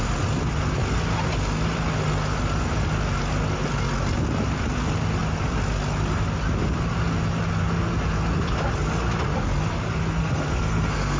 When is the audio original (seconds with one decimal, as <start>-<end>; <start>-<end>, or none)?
0.0-10.2